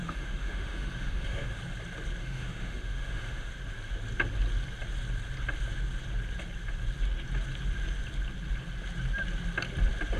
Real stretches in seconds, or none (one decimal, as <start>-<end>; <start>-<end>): 1.6-2.2; 3.5-10.2